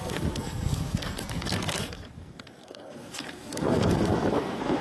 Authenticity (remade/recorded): remade